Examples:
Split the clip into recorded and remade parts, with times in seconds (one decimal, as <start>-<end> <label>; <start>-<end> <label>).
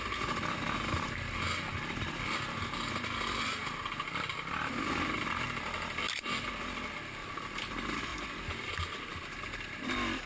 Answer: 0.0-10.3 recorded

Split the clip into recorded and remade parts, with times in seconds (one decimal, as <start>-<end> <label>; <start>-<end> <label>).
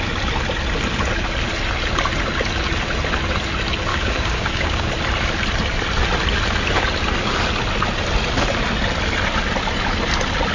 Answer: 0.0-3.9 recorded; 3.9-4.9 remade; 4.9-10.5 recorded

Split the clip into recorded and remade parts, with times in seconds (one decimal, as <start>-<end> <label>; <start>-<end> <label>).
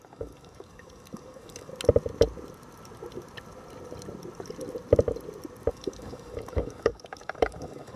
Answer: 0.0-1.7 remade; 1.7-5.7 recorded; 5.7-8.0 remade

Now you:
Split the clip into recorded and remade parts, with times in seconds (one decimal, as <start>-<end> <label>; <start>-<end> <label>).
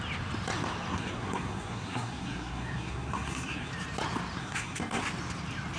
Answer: 0.0-0.9 recorded; 0.9-3.7 remade; 3.7-4.4 recorded; 4.4-5.0 remade; 5.0-5.8 recorded